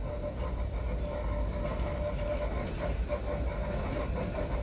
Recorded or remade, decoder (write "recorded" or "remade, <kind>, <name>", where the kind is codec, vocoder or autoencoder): recorded